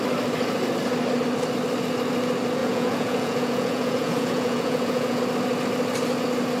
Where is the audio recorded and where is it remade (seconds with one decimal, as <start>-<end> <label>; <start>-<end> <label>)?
0.0-2.6 recorded; 2.6-5.2 remade; 5.2-6.6 recorded